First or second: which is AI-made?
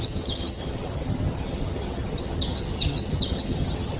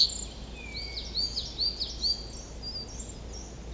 first